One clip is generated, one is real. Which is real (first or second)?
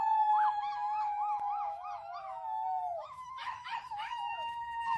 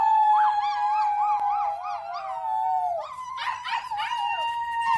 second